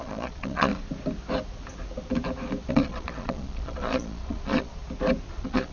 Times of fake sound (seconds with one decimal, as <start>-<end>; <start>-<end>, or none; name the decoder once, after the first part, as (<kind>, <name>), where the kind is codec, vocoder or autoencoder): 0.0-0.7 (vocoder, Vocos); 2.7-4.8; 5.3-5.7